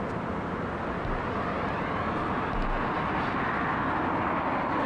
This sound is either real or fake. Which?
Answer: real